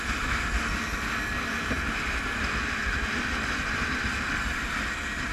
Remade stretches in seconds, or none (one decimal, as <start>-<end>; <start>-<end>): 2.8-5.3